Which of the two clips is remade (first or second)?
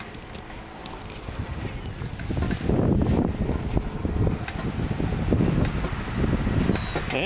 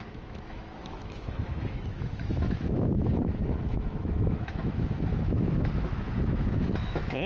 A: second